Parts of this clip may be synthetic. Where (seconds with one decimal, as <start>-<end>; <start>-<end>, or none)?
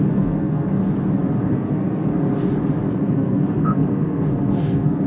0.0-0.7; 1.5-2.1; 2.9-5.1